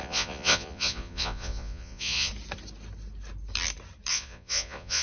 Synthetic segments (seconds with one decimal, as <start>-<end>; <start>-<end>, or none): 0.0-2.3; 4.1-5.0